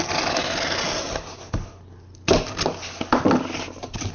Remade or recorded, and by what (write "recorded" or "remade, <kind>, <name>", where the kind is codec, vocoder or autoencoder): recorded